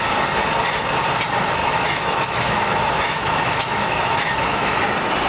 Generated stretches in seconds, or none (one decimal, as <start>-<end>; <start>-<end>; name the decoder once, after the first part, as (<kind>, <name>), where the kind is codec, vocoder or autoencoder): 1.6-4.8 (autoencoder, DAC-VAE)